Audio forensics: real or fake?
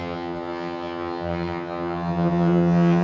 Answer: fake